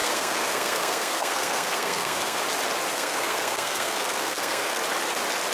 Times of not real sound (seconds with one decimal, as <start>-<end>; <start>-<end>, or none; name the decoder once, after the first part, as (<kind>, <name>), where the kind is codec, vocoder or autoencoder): 0.0-2.4 (codec, SNAC); 2.9-4.8